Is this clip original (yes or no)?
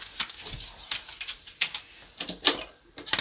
yes